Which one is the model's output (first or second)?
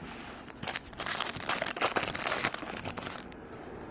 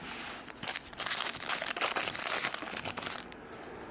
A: first